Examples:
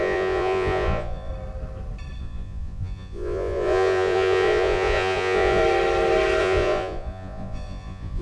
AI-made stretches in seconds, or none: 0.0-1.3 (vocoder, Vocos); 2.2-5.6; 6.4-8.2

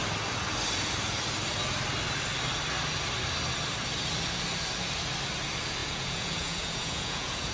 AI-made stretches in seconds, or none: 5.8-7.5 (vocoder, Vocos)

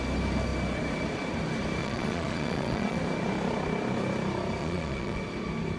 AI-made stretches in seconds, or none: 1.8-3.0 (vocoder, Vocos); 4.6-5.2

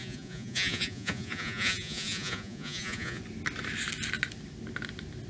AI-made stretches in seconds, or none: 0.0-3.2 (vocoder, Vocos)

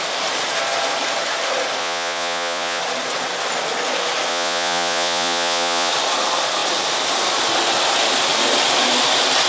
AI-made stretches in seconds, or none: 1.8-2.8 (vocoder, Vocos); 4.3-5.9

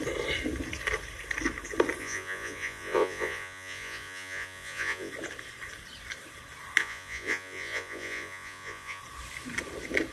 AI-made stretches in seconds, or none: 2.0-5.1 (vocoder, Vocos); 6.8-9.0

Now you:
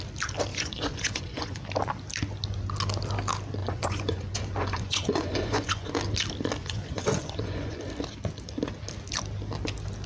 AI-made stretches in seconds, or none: 0.5-1.6 (vocoder, Vocos); 3.6-5.9; 6.6-7.8

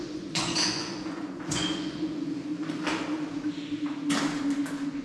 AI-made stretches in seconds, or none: 0.0-2.5 (vocoder, Vocos)